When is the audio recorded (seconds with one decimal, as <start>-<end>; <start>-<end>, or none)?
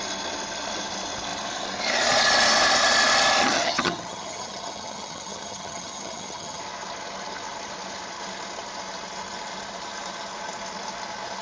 0.0-3.4; 6.6-11.4